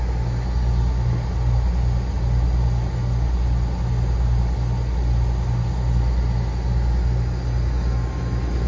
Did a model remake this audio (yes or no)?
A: no